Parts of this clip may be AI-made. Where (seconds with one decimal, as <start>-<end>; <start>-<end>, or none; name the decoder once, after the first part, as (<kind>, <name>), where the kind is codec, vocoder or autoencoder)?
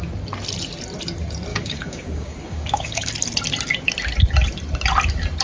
1.5-3.1 (codec, DAC)